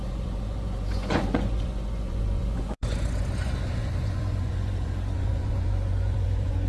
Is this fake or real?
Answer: fake